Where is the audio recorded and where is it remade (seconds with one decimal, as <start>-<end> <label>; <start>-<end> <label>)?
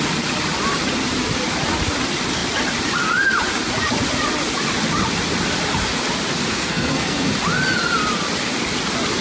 0.0-6.5 recorded; 6.5-7.3 remade; 7.3-9.2 recorded